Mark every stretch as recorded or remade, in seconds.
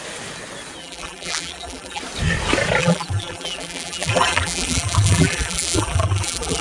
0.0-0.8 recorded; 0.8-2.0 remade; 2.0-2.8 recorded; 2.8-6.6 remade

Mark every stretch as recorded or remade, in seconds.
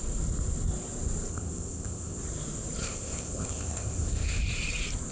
0.0-1.3 recorded; 1.3-2.2 remade; 2.2-2.8 recorded; 2.8-4.4 remade; 4.4-5.1 recorded